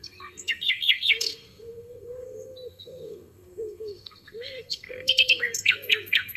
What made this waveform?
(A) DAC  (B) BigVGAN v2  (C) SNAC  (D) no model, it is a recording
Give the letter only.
C